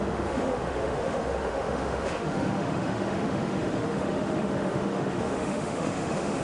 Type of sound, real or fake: fake